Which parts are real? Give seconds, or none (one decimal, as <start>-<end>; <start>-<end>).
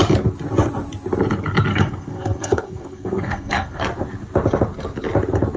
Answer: 0.0-1.7; 3.8-5.6